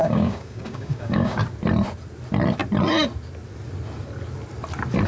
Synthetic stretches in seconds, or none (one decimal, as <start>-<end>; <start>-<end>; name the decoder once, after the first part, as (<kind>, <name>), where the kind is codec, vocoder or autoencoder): 0.0-1.4 (codec, DAC)